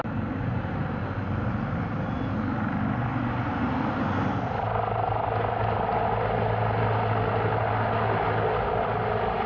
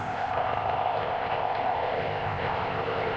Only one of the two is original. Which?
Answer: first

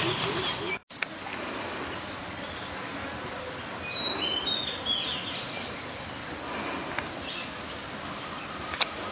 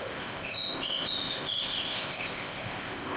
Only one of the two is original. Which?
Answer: first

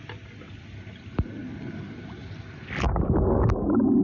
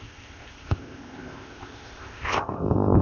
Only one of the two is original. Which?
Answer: first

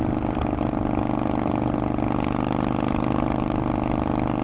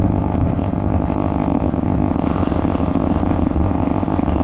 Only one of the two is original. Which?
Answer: first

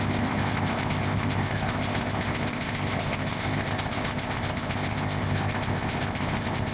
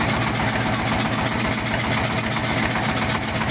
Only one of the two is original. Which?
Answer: second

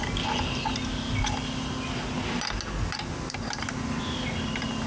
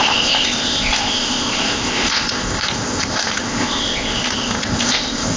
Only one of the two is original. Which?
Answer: first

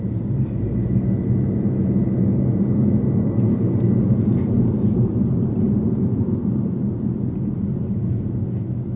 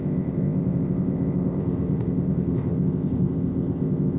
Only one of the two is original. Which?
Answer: first